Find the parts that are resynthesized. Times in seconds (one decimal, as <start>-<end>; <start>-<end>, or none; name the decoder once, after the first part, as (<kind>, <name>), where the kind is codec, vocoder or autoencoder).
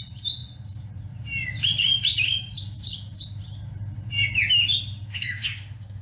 5.1-6.0 (autoencoder, DAC-VAE)